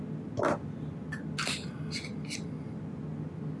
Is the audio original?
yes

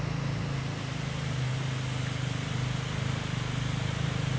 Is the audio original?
yes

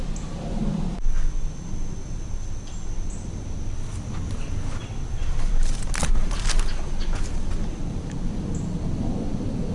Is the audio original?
yes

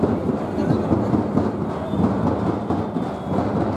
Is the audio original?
yes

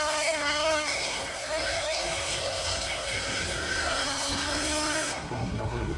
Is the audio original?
no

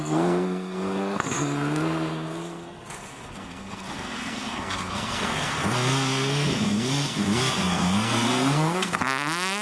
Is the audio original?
no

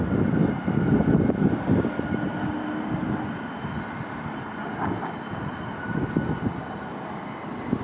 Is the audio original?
yes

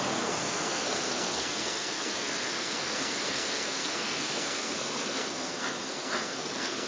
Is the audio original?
no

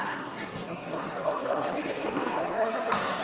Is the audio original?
no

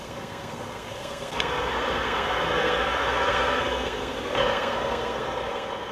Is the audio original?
no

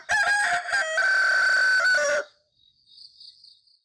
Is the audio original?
yes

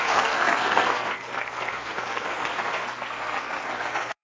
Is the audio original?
no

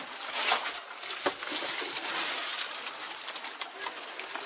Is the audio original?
yes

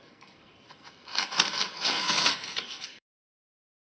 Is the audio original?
no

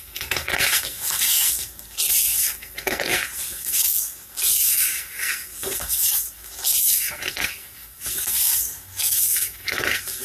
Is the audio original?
no